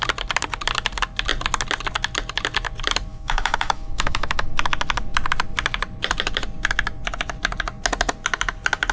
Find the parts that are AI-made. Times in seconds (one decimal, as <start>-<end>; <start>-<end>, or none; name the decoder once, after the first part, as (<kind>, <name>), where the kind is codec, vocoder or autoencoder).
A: 3.1-4.5 (autoencoder, DAC-VAE)